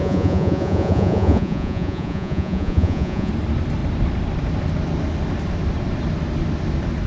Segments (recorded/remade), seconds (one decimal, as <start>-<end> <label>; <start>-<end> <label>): 0.0-3.3 remade; 3.3-7.1 recorded